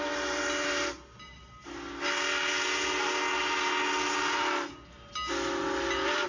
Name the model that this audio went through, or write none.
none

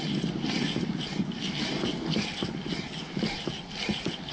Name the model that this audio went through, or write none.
none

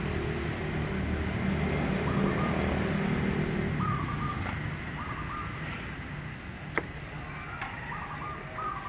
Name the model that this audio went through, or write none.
none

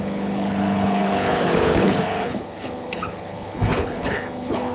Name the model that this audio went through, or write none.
codec, HILCodec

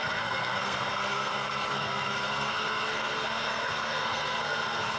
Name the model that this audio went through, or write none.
codec, SNAC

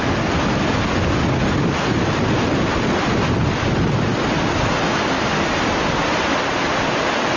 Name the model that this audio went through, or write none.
none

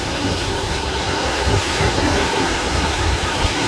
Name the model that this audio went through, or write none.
codec, SNAC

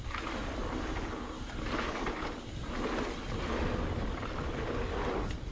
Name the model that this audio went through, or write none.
none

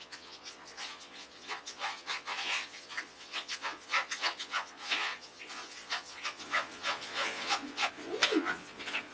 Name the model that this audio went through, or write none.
vocoder, Vocos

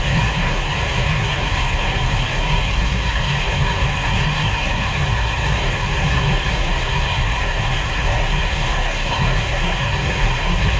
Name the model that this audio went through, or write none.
codec, SNAC